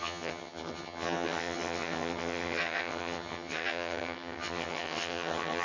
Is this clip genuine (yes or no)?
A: no